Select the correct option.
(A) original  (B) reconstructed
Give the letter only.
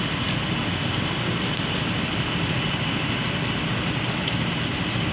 A